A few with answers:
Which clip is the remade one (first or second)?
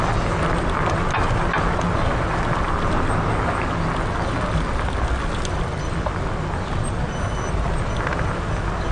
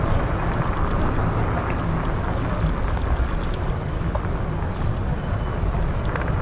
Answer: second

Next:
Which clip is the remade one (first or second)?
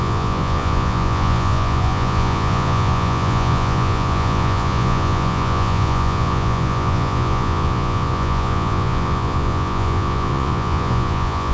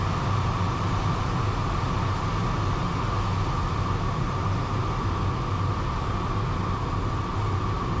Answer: first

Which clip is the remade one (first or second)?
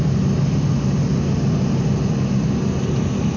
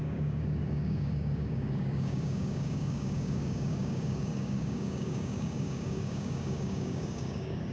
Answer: second